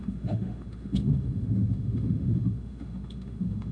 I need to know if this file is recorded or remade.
remade